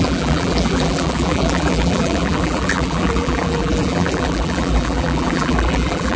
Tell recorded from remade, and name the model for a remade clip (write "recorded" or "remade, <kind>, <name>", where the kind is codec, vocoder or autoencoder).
remade, vocoder, BigVGAN v2